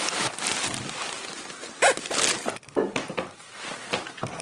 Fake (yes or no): no